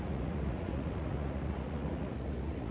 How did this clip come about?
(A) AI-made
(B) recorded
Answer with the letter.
A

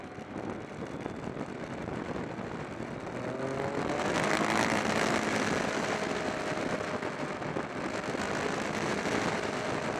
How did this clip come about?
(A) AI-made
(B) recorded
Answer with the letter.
B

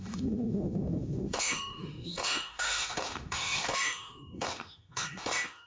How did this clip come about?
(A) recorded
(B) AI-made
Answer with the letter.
B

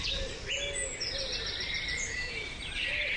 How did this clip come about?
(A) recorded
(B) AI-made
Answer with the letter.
A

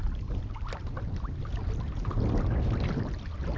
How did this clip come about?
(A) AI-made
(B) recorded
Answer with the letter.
B